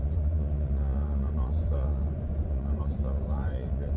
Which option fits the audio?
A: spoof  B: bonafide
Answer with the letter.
A